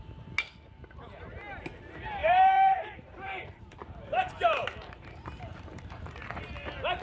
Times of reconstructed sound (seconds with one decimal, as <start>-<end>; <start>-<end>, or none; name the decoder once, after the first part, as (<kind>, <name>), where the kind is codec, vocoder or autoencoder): 2.2-6.4 (vocoder, BigVGAN v2)